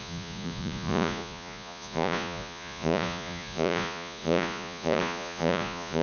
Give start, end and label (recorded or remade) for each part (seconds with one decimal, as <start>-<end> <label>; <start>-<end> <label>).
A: 0.0-6.0 remade